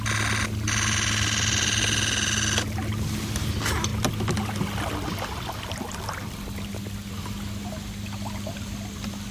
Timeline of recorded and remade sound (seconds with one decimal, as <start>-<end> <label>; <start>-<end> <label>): 0.0-9.3 recorded